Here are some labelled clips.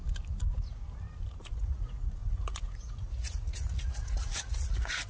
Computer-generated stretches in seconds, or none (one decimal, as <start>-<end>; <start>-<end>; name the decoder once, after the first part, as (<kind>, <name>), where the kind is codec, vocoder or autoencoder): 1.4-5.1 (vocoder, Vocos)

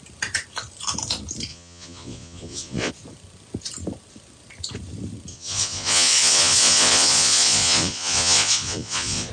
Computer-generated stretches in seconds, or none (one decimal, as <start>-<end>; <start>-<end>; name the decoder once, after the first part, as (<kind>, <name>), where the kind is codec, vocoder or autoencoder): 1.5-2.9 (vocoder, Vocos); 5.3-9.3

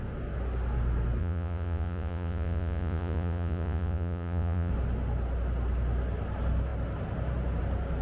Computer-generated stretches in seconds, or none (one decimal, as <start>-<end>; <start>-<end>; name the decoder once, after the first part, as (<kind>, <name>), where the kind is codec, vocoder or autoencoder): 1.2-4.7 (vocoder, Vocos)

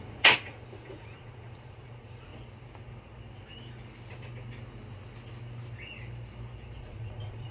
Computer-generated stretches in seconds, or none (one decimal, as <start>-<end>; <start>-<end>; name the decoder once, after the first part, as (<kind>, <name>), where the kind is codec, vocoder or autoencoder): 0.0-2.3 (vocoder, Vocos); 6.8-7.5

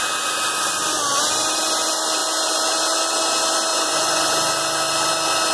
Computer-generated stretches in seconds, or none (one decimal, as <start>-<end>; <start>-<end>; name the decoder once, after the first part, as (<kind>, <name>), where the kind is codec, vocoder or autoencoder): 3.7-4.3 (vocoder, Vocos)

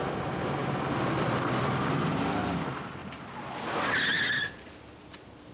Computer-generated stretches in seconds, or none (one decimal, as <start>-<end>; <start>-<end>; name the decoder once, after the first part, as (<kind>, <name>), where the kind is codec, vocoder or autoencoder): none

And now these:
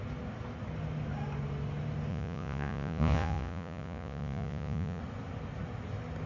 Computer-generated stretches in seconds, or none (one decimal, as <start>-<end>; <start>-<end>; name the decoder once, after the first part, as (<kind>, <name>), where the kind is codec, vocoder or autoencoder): 2.1-5.0 (vocoder, Vocos)